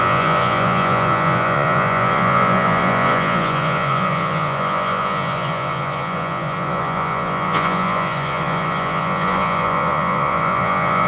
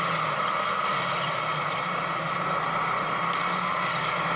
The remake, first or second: first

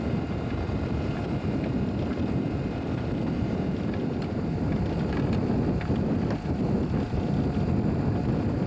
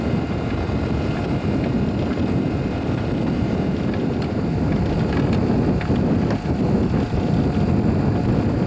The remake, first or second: first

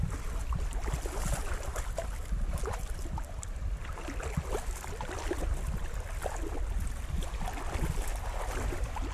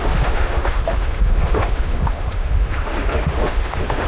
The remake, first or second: second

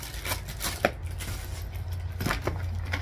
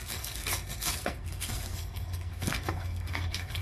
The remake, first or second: second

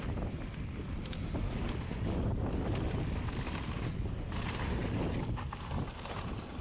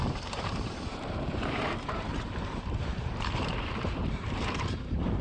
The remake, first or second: second